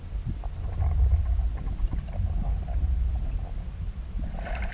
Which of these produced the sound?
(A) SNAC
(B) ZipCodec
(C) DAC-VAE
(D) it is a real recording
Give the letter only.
D